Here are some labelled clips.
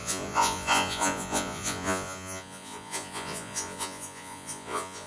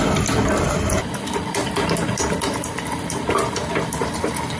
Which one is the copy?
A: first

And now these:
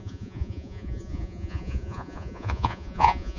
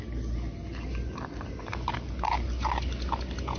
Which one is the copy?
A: first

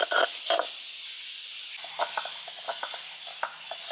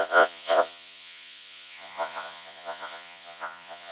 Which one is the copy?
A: second